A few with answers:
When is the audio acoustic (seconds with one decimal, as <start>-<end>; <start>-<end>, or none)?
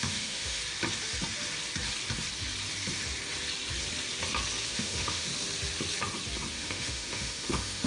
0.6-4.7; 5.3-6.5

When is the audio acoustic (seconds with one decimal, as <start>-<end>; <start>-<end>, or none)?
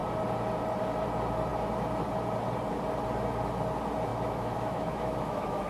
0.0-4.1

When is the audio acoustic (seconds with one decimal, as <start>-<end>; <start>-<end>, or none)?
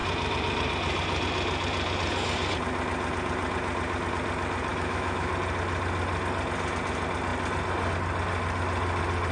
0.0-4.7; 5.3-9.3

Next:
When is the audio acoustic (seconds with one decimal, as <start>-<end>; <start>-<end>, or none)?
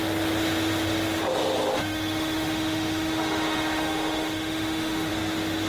0.0-1.7; 5.1-5.7